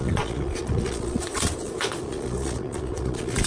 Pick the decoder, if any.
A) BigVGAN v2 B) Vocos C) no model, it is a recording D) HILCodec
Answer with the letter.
B